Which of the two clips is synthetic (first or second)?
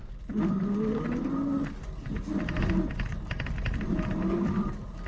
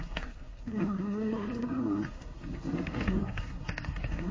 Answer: second